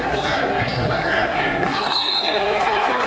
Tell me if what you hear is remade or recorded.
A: remade